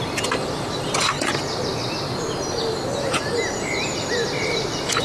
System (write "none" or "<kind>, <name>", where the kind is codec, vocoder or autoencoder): none